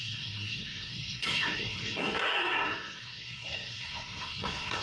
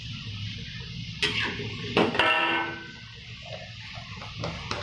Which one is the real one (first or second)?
second